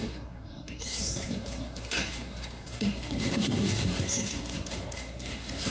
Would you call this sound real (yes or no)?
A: no